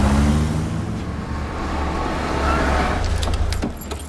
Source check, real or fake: real